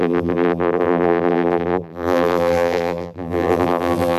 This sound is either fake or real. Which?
fake